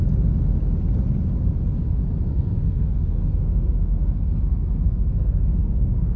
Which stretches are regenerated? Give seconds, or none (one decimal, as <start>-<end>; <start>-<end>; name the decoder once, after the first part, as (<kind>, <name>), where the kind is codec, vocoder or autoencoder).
2.3-6.2 (codec, SNAC)